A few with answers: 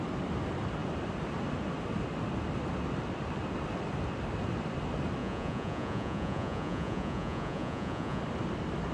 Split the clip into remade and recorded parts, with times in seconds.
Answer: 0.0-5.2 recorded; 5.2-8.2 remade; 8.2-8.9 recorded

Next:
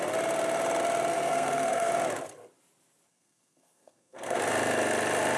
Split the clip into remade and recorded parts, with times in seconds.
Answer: 0.0-1.1 recorded; 1.1-1.9 remade; 1.9-3.1 recorded; 3.1-4.4 remade; 4.4-5.4 recorded

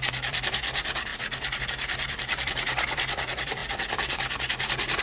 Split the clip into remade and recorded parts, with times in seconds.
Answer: 0.0-1.1 remade; 1.1-1.6 recorded; 1.6-3.6 remade; 3.6-5.0 recorded

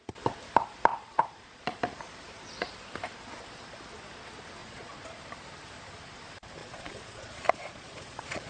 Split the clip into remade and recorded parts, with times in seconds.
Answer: 0.0-0.9 recorded; 0.9-1.8 remade; 1.8-4.6 recorded; 4.6-5.2 remade; 5.2-6.6 recorded; 6.6-8.5 remade